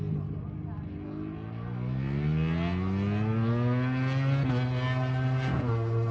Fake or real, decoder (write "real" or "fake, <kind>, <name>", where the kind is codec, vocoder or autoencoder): real